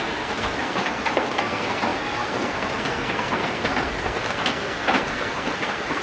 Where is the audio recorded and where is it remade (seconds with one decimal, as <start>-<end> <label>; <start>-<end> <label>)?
0.0-6.0 remade